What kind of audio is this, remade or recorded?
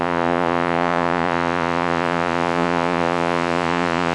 remade